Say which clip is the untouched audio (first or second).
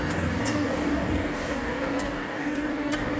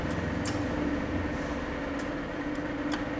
second